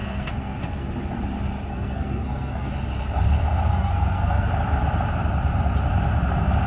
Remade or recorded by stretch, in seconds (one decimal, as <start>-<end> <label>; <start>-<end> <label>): 0.0-0.9 remade; 0.9-1.7 recorded; 1.7-2.7 remade; 2.7-3.7 recorded; 3.7-4.5 remade; 4.5-6.7 recorded